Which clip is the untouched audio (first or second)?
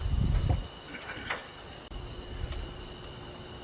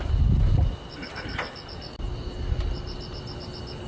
second